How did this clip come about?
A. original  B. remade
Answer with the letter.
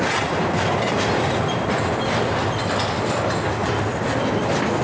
A